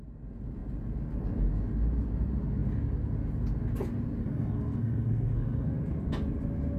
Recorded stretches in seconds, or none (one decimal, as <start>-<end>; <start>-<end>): 0.0-4.2; 5.8-6.8